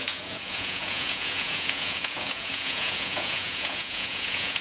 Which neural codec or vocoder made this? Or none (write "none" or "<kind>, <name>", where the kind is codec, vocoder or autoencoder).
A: vocoder, Vocos